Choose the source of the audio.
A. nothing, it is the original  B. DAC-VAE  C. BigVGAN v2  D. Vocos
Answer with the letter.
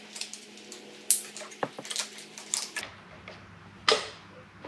A